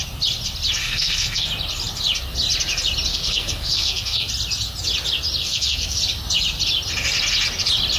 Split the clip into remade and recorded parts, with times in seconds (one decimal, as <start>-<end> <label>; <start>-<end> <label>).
0.0-0.8 recorded; 0.8-1.5 remade; 1.5-3.1 recorded; 3.1-4.3 remade; 4.3-5.4 recorded; 5.4-6.0 remade; 6.0-8.0 recorded